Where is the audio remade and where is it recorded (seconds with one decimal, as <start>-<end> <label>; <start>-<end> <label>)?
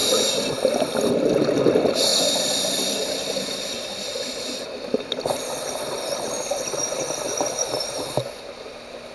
0.0-2.1 recorded; 2.1-6.9 remade; 6.9-9.1 recorded